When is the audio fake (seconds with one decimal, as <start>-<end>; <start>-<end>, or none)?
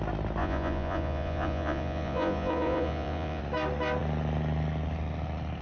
0.4-3.4